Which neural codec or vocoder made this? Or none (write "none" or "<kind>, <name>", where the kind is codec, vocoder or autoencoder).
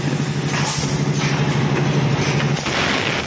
none